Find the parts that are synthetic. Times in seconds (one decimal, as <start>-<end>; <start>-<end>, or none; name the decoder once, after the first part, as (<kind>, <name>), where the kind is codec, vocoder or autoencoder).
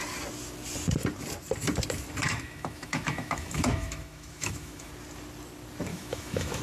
2.2-4.9 (autoencoder, DAC-VAE); 5.9-6.6